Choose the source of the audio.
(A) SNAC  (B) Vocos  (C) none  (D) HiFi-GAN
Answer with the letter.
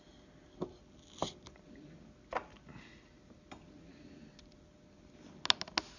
C